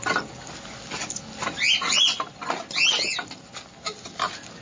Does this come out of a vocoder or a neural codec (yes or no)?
no